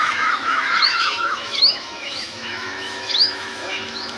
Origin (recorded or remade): remade